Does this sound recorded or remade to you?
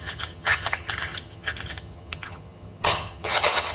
remade